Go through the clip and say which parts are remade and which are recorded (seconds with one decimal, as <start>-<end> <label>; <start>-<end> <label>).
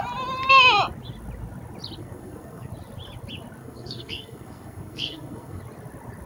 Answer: 0.0-2.0 recorded; 2.0-2.7 remade; 2.7-3.6 recorded; 3.6-5.6 remade; 5.6-6.3 recorded